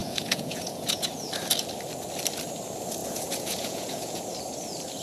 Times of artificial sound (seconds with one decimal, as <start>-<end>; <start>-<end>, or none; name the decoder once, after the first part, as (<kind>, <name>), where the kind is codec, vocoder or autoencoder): 0.0-1.3 (vocoder, Vocos); 3.0-4.2